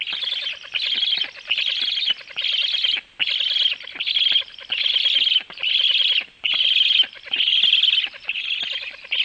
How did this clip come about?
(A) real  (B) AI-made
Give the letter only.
A